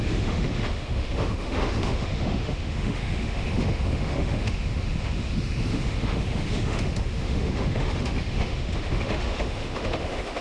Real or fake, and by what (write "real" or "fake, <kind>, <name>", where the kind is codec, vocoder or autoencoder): fake, autoencoder, DAC-VAE